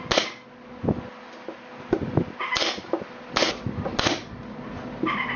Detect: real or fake real